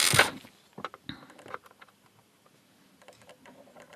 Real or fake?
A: real